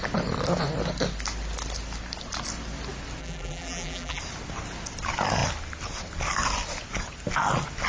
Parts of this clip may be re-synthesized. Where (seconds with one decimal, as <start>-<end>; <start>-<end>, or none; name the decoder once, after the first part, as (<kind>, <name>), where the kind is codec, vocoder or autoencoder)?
3.2-4.2 (vocoder, BigVGAN v2)